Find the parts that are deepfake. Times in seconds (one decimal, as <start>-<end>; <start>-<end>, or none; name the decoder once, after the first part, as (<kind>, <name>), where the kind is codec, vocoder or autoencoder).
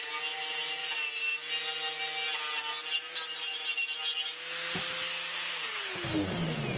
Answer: none